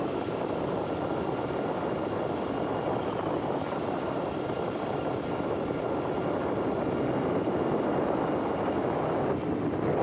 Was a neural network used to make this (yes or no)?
no